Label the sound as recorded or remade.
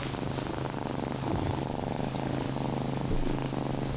recorded